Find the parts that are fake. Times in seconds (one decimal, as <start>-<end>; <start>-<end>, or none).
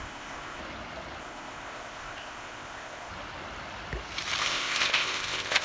0.0-0.6; 1.2-3.1; 4.4-5.6